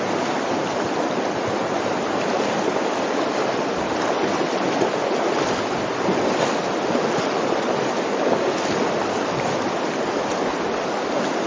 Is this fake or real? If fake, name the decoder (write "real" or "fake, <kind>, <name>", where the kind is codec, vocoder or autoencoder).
real